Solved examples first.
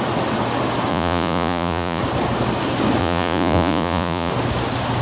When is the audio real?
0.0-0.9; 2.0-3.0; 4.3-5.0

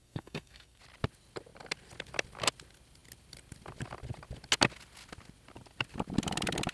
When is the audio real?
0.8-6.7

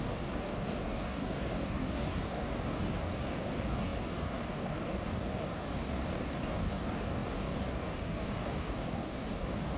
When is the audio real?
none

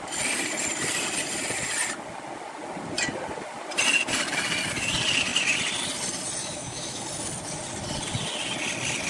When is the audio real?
0.0-6.4; 7.0-9.1